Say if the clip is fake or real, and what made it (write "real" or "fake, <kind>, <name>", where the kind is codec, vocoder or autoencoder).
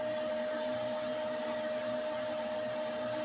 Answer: real